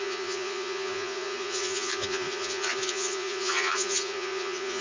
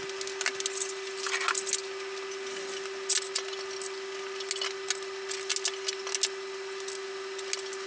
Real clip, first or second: second